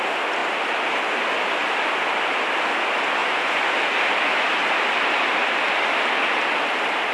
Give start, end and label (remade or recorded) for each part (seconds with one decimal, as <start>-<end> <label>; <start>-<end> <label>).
0.0-3.2 recorded; 3.2-3.7 remade; 3.7-7.1 recorded